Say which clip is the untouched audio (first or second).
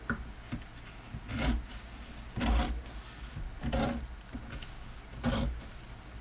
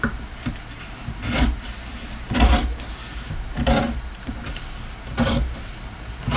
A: first